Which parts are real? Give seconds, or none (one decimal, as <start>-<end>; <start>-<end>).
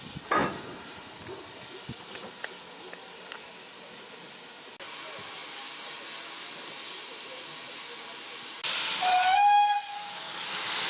0.0-9.1; 10.5-10.9